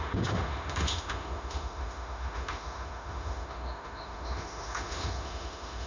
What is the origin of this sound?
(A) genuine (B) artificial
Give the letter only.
B